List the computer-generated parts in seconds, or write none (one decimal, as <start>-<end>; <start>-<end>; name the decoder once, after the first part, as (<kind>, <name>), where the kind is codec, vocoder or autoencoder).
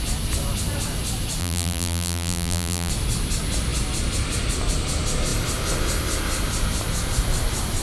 1.4-2.9 (vocoder, BigVGAN v2)